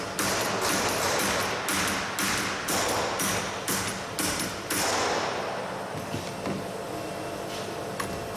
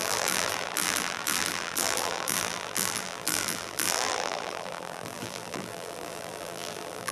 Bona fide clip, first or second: first